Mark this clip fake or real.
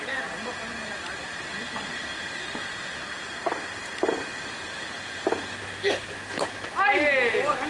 real